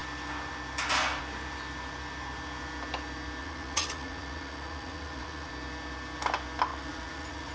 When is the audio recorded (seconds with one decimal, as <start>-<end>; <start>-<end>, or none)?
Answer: 0.0-3.4; 5.5-6.7